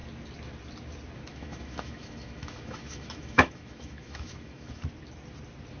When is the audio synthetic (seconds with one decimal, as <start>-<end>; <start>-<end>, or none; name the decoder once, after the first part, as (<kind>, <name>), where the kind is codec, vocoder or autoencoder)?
1.3-4.8 (autoencoder, DAC-VAE)